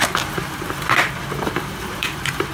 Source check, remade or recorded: remade